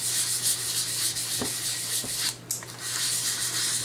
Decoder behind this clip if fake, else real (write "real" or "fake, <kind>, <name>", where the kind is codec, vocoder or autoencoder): real